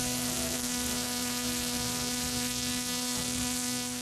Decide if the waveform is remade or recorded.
remade